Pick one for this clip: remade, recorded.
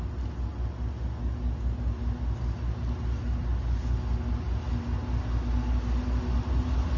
recorded